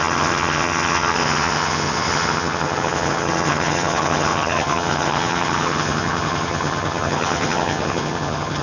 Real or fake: fake